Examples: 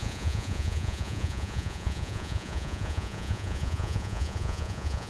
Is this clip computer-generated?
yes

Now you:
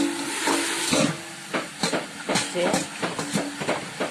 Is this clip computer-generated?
no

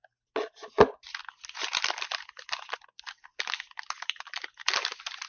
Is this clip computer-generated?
no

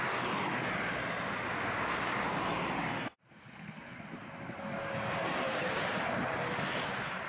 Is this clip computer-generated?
no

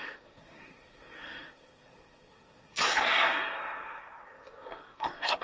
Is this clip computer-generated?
yes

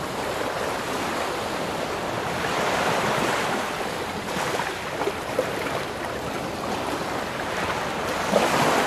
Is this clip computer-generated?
yes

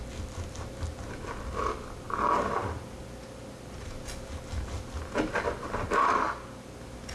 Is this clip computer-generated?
no